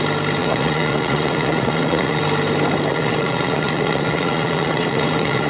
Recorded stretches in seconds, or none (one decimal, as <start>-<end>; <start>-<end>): 0.0-0.4; 2.2-2.9